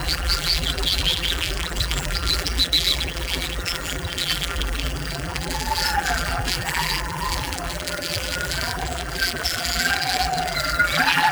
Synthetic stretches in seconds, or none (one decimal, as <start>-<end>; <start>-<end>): 0.0-11.3